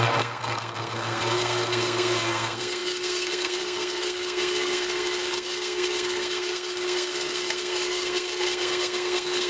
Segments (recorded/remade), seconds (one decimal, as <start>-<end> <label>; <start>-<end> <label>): 0.0-9.5 remade